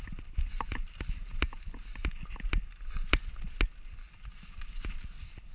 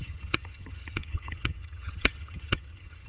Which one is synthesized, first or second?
second